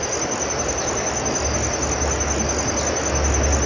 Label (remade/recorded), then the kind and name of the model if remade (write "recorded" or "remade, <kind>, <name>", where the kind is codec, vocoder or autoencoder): recorded